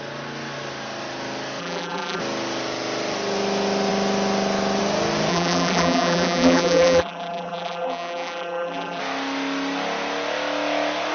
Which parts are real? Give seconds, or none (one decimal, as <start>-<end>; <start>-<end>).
0.0-1.6; 2.2-5.3; 9.0-11.1